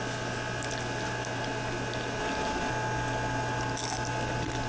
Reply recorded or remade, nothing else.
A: recorded